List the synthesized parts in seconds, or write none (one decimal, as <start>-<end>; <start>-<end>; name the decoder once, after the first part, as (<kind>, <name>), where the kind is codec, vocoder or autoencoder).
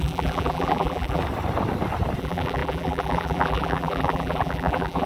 0.0-1.2 (vocoder, BigVGAN v2); 2.2-5.1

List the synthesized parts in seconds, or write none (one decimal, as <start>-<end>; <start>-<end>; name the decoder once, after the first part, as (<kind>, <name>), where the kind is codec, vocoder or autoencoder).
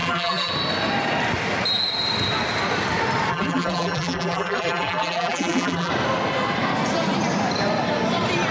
0.0-0.5 (vocoder, BigVGAN v2); 3.3-5.9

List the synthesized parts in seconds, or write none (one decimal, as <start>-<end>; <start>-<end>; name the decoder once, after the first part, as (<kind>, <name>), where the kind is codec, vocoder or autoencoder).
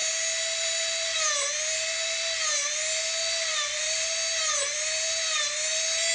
3.2-4.1 (vocoder, BigVGAN v2)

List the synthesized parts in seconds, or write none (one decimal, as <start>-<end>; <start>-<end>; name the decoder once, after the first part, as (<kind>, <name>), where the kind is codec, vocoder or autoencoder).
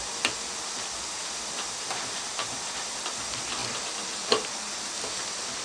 1.2-3.1 (vocoder, BigVGAN v2)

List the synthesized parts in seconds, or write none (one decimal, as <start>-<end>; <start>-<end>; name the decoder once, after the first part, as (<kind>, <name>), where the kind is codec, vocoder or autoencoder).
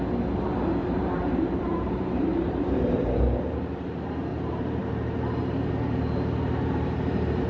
0.8-3.4 (vocoder, BigVGAN v2); 4.3-5.7; 6.6-7.5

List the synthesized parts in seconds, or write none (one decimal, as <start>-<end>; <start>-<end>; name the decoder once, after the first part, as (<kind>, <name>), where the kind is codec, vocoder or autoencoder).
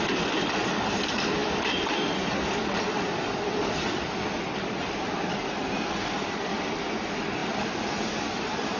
0.0-8.8 (vocoder, BigVGAN v2)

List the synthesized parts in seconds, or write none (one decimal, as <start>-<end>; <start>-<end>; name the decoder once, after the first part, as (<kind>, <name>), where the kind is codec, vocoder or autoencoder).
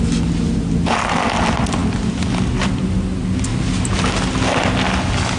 none